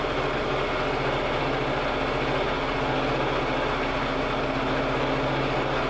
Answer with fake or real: real